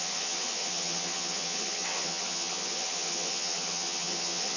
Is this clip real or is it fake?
fake